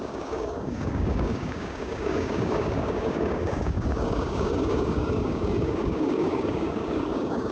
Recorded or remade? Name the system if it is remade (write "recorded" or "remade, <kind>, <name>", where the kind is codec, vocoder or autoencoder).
remade, codec, DAC